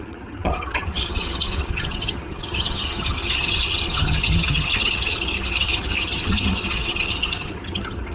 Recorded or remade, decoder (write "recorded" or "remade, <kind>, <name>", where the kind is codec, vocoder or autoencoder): remade, vocoder, HiFi-GAN